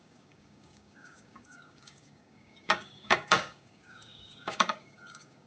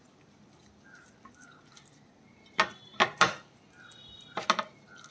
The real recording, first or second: second